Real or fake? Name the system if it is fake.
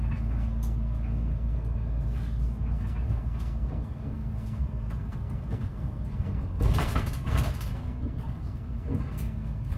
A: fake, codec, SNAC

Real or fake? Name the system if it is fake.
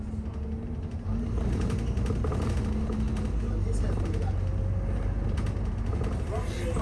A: real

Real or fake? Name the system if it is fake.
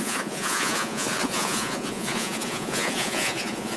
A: fake, vocoder, Vocos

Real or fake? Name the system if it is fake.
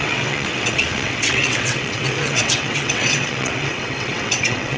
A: fake, vocoder, WaveNeXt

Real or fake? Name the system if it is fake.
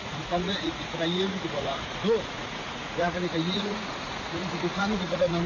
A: fake, vocoder, Vocos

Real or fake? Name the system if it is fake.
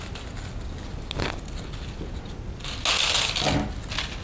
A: real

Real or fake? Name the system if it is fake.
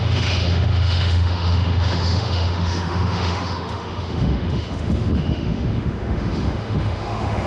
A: fake, autoencoder, DAC-VAE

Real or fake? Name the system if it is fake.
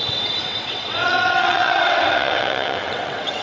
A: fake, vocoder, WaveNeXt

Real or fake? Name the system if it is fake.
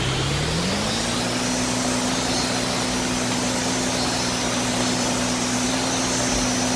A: real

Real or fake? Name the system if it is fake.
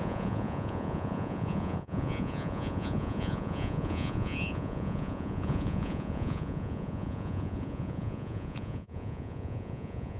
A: fake, vocoder, Vocos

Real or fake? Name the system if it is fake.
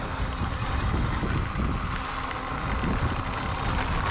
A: real